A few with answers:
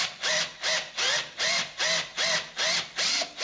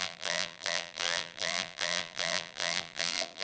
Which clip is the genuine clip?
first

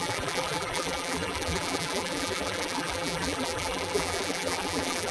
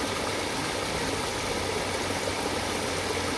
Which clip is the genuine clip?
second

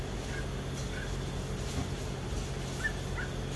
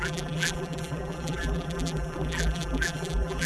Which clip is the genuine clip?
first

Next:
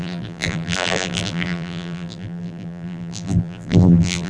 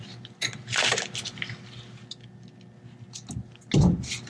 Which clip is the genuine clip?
second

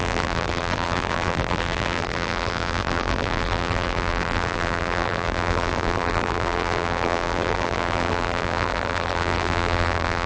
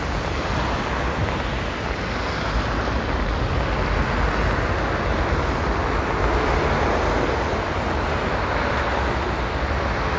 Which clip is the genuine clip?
second